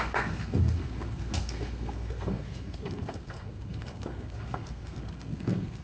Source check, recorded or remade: remade